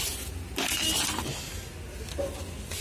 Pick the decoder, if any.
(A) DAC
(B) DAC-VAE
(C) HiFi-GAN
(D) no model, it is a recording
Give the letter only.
D